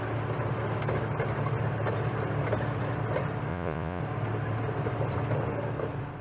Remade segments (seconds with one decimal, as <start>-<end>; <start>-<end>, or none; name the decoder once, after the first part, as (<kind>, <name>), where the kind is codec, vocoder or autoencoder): 3.5-4.0 (vocoder, Vocos)